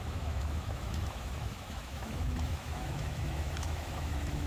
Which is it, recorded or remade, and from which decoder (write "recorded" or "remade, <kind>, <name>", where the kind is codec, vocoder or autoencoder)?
remade, autoencoder, DAC-VAE